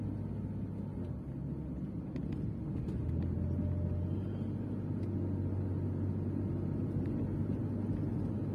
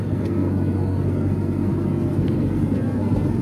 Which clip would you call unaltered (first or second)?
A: first